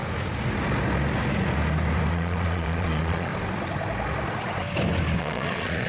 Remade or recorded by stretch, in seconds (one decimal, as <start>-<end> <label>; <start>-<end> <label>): 0.0-2.1 recorded; 2.1-3.3 remade; 3.3-5.2 recorded; 5.2-5.9 remade